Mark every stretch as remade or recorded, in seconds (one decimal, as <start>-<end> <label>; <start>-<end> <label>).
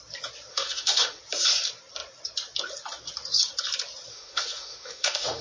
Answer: 0.0-0.5 recorded; 0.5-1.2 remade; 1.2-4.1 recorded; 4.1-5.4 remade